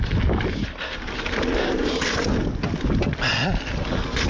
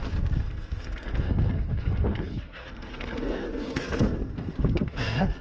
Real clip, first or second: first